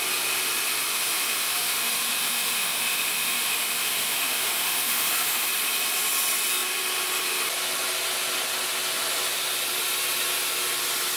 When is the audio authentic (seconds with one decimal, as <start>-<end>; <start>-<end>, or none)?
0.0-0.9; 5.5-11.2